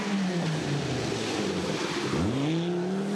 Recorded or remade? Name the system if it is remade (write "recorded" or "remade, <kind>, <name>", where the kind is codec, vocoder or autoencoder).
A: recorded